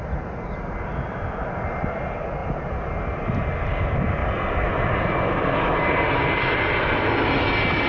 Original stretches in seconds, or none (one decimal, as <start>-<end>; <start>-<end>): 0.0-7.9